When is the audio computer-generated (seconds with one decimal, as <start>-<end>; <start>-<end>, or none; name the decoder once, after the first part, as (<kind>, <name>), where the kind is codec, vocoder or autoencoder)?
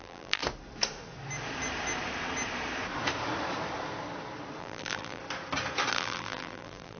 0.0-0.4 (vocoder, BigVGAN v2); 4.6-5.2; 5.9-7.0